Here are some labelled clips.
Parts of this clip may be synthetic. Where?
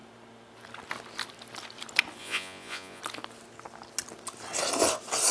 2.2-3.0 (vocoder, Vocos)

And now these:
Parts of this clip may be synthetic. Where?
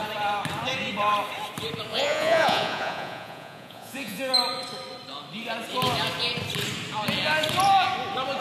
1.9-4.2 (vocoder, Vocos)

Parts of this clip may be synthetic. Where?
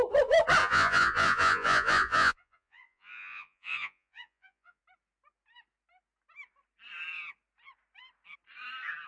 0.6-4.8 (vocoder, Vocos)